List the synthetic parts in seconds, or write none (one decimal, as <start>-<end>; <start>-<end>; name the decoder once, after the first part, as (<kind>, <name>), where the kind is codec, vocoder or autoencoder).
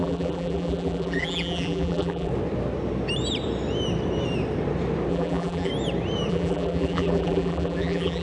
0.0-2.3 (vocoder, BigVGAN v2); 5.1-5.7; 6.3-8.2